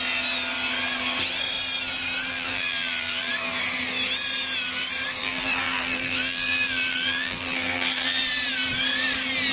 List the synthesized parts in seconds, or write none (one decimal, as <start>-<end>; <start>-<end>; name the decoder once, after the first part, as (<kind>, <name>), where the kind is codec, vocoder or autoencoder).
2.3-3.3 (vocoder, BigVGAN v2); 5.2-8.2